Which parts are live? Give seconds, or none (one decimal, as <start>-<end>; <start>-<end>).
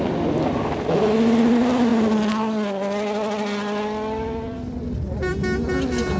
0.0-6.2